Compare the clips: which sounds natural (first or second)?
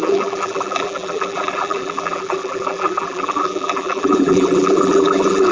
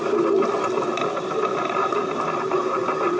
second